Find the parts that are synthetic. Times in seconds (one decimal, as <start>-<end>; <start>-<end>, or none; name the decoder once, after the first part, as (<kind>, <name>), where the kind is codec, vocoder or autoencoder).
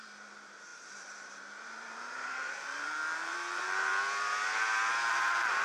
0.0-3.9 (vocoder, BigVGAN v2); 5.1-5.6